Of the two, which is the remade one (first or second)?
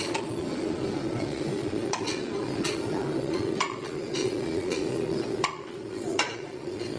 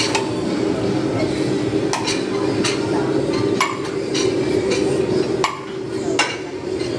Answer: first